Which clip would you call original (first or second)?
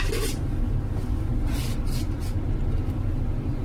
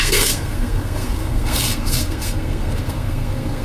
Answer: first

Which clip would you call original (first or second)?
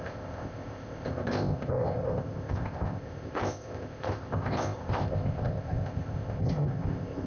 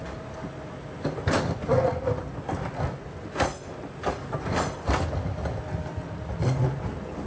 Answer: second